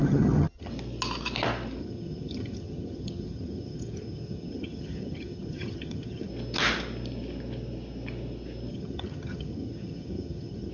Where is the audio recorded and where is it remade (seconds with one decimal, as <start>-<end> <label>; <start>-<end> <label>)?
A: 0.0-0.7 remade; 0.7-1.8 recorded; 1.8-6.3 remade; 6.3-8.7 recorded; 8.7-10.7 remade